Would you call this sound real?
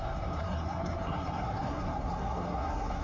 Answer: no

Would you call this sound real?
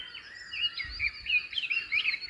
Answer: yes